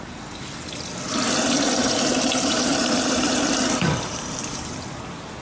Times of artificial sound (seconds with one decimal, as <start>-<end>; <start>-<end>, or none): 1.8-4.7